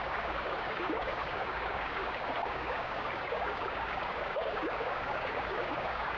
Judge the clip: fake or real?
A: fake